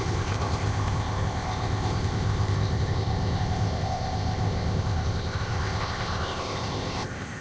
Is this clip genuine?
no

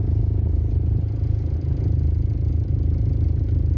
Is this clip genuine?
yes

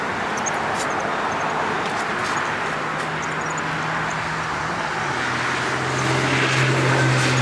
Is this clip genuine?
yes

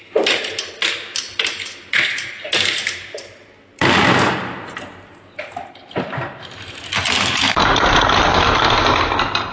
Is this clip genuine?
no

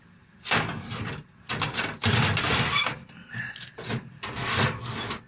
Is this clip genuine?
yes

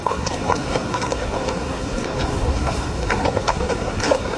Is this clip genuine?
no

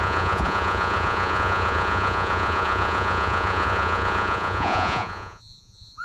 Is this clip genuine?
no